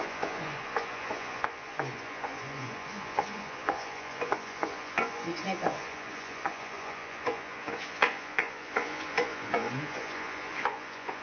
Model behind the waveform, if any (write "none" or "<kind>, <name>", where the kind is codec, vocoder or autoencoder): vocoder, Vocos